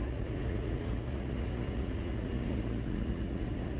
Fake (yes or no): yes